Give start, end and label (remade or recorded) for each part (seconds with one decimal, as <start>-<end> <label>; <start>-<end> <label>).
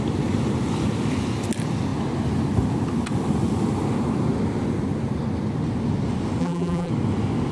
0.0-6.4 recorded; 6.4-6.9 remade; 6.9-7.5 recorded